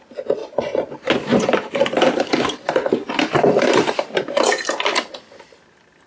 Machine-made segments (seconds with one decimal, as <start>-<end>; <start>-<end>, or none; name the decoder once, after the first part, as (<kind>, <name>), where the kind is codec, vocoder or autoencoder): 0.4-0.9 (vocoder, BigVGAN v2); 1.3-4.8